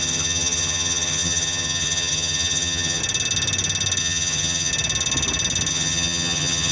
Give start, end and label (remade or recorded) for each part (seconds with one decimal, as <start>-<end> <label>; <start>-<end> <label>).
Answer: 0.0-3.0 remade; 3.0-4.0 recorded; 4.0-4.7 remade; 4.7-5.7 recorded; 5.7-6.7 remade

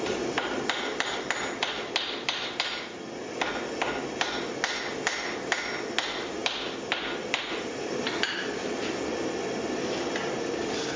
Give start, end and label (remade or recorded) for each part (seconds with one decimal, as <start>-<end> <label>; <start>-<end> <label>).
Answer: 0.0-11.0 recorded

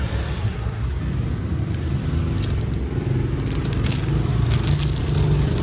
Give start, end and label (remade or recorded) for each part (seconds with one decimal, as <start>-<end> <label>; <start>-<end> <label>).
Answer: 0.0-0.4 recorded; 0.4-1.0 remade; 1.0-5.6 recorded

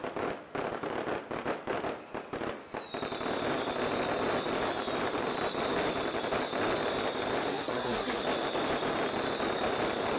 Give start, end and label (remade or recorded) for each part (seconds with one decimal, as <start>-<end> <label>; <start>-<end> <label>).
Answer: 0.0-7.5 recorded; 7.5-8.2 remade; 8.2-10.2 recorded

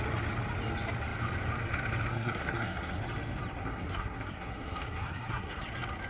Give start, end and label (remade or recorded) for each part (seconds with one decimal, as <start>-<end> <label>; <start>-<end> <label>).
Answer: 0.0-2.1 recorded; 2.1-3.0 remade; 3.0-3.6 recorded; 3.6-5.6 remade; 5.6-6.1 recorded